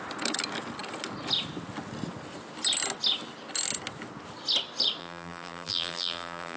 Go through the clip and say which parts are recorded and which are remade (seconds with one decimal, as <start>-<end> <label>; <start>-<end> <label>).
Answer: 0.0-5.0 recorded; 5.0-6.6 remade